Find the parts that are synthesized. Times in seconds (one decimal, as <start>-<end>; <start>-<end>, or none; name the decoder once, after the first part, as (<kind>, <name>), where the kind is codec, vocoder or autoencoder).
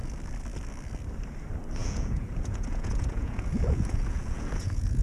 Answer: 1.8-5.0 (vocoder, Vocos)